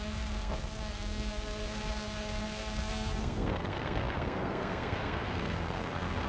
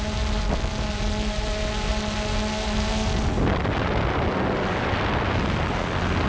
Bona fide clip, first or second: second